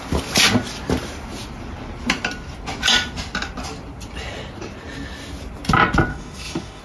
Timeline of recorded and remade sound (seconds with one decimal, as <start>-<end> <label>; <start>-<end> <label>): 0.0-6.1 recorded; 6.1-6.8 remade